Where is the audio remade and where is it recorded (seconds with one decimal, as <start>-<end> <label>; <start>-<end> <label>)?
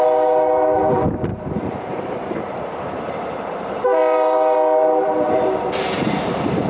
0.0-6.7 remade